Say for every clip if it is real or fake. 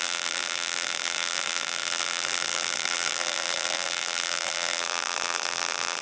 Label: fake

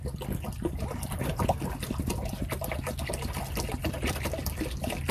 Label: real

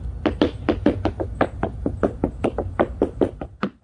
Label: real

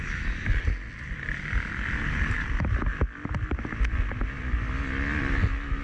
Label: real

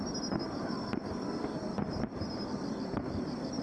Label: fake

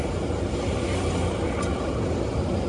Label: real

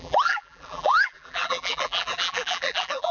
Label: fake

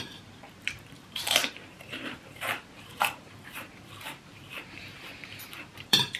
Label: fake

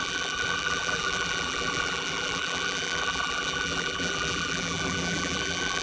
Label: fake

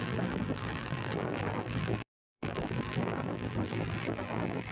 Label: fake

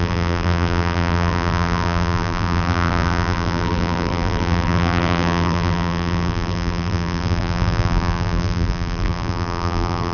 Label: fake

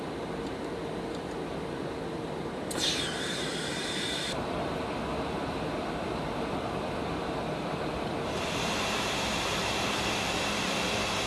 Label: fake